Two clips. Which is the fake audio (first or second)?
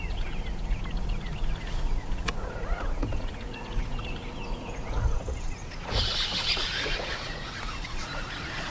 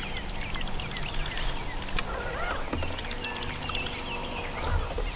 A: first